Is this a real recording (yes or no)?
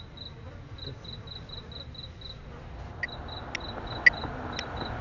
yes